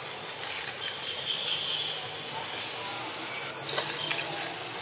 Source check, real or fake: real